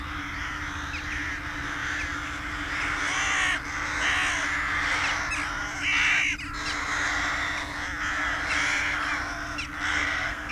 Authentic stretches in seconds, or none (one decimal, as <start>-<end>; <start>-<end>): 0.0-9.9